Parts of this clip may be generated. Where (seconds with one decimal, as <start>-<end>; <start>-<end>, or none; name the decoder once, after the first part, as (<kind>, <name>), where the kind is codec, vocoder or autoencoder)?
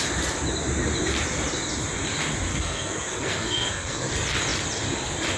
2.5-4.1 (codec, SNAC)